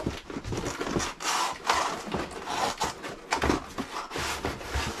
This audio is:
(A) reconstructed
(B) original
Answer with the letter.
B